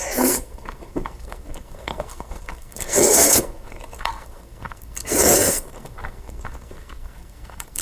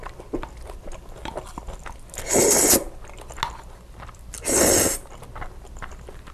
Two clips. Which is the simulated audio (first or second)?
first